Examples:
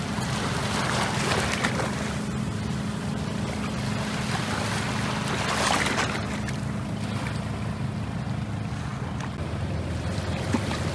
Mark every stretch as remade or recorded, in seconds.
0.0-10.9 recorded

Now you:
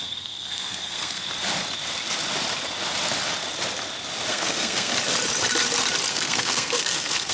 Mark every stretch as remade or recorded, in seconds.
0.0-1.2 remade; 1.2-4.3 recorded; 4.3-4.9 remade; 4.9-6.1 recorded; 6.1-7.3 remade

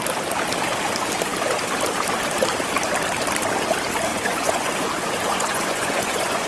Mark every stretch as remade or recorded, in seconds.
0.0-4.1 recorded; 4.1-4.7 remade; 4.7-5.3 recorded; 5.3-6.5 remade

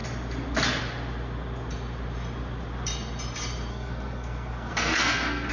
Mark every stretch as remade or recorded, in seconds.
0.0-3.7 recorded; 3.7-5.5 remade

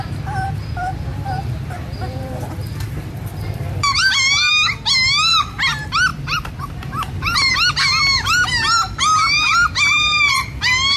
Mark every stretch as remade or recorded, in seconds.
0.0-1.1 recorded; 1.1-2.3 remade; 2.3-3.3 recorded; 3.3-4.5 remade; 4.5-6.1 recorded; 6.1-7.5 remade; 7.5-11.0 recorded

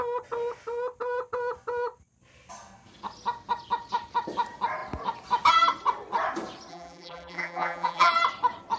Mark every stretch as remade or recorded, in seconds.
0.0-6.7 recorded; 6.7-8.1 remade; 8.1-8.8 recorded

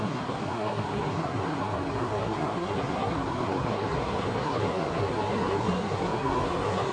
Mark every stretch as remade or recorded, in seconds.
0.0-6.9 remade

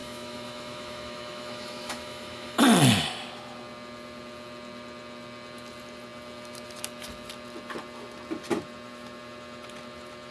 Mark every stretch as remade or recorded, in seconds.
0.0-2.6 remade; 2.6-10.3 recorded